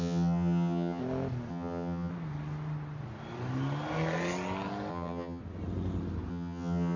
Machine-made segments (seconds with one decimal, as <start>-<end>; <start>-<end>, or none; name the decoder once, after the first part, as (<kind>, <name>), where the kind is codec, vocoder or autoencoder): 0.0-1.0 (vocoder, HiFi-GAN); 1.5-2.1; 4.9-5.4; 6.3-7.0